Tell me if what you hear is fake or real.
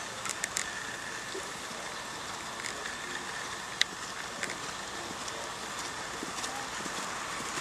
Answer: real